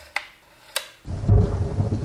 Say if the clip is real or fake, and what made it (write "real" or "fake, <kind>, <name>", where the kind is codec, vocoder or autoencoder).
real